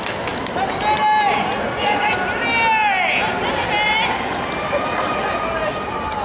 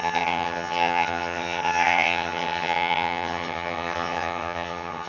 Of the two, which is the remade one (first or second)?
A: second